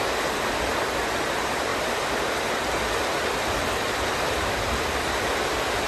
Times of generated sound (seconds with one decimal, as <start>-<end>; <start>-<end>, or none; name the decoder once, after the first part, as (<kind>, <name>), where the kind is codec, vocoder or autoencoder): 1.7-5.2 (vocoder, BigVGAN v2)